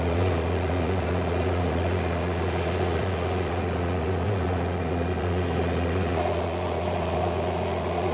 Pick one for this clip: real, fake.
fake